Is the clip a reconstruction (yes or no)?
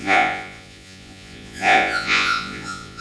yes